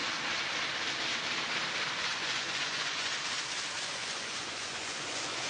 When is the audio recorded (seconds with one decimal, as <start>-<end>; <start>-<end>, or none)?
0.0-1.9; 3.1-3.8